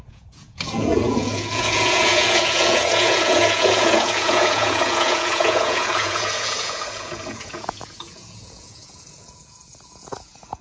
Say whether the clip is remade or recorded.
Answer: remade